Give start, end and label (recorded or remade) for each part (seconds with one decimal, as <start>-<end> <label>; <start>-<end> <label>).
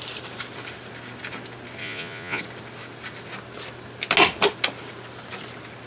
0.0-1.8 recorded; 1.8-2.4 remade; 2.4-5.9 recorded